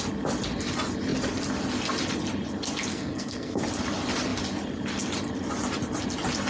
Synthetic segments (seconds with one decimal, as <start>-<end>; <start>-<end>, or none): 2.9-3.6